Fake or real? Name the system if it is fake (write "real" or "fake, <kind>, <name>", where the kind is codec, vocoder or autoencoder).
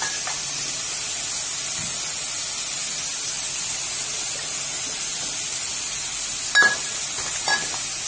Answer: real